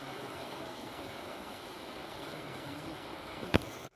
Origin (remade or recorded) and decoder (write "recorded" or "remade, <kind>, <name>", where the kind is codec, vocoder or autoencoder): remade, codec, SNAC